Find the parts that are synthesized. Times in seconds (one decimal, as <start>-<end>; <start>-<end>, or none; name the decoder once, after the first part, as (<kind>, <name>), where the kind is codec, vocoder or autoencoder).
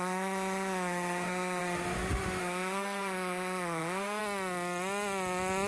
0.0-4.2 (autoencoder, DAC-VAE)